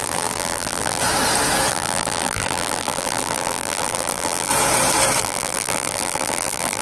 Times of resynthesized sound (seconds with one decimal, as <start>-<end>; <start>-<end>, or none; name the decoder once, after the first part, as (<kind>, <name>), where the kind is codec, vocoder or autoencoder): 0.0-1.0 (vocoder, BigVGAN v2); 1.7-4.5; 5.2-6.8